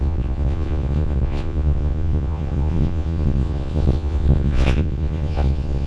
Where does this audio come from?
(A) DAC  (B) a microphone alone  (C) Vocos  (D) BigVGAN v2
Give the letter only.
C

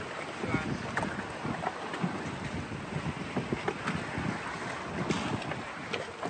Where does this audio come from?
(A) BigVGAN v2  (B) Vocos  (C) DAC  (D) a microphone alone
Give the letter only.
D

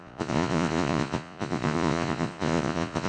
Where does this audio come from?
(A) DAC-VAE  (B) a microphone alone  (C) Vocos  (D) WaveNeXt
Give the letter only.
C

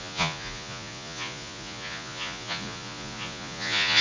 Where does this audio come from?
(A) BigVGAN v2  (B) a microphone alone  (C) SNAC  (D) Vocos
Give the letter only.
D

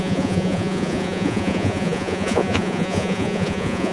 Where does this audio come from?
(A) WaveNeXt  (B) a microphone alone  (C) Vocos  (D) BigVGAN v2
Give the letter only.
C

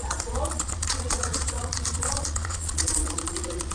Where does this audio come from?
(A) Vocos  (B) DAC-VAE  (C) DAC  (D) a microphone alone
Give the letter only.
A